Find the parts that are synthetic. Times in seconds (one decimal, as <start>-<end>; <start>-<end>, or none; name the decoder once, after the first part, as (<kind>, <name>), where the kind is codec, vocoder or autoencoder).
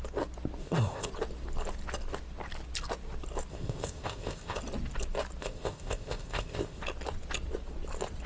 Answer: 0.6-1.1 (codec, ZipCodec); 3.5-4.6; 5.4-6.8